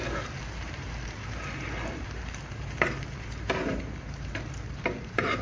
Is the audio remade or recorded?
remade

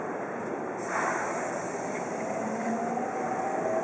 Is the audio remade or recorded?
remade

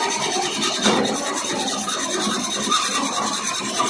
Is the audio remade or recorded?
remade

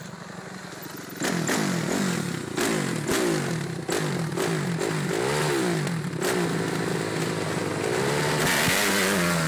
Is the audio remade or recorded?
recorded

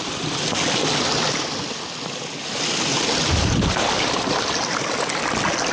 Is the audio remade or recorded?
recorded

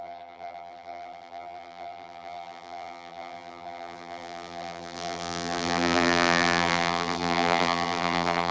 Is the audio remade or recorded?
remade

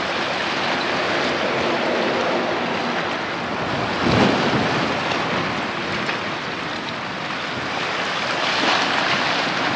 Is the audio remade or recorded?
recorded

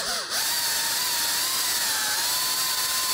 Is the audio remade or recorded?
remade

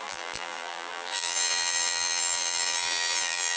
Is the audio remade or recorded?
remade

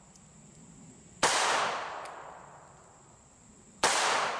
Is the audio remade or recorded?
remade